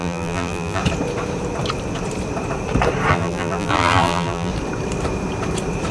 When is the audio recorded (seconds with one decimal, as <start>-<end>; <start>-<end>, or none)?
0.8-3.1; 4.5-5.9